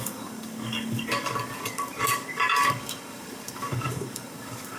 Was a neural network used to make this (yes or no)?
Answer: yes